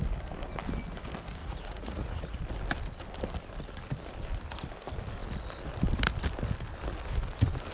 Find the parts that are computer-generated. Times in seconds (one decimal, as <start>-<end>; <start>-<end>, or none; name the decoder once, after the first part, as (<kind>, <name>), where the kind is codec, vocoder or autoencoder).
1.4-2.4 (vocoder, Vocos)